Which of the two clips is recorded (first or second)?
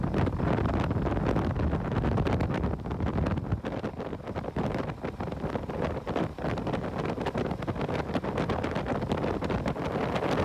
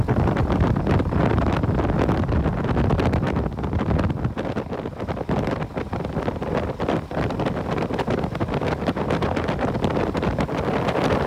first